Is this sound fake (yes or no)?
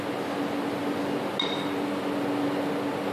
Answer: no